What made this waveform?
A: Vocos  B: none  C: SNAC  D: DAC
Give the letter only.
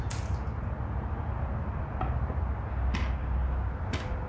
B